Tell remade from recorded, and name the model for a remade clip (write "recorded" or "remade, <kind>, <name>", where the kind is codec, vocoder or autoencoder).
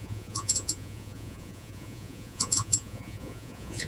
remade, vocoder, Vocos